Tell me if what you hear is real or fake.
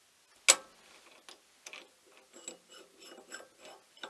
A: real